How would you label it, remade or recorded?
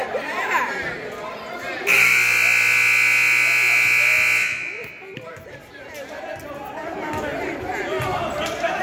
recorded